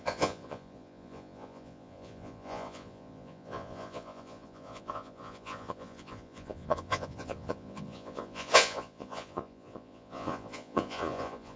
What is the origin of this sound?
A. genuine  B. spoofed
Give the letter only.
B